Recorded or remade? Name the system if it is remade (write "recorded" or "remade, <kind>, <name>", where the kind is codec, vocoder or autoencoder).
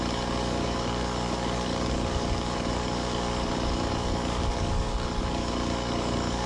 remade, codec, DAC